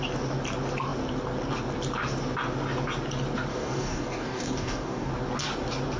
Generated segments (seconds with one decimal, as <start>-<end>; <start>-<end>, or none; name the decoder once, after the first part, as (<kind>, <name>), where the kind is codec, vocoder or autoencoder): 3.5-5.1 (codec, DAC)